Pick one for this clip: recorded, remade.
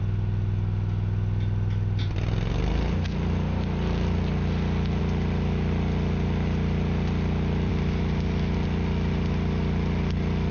recorded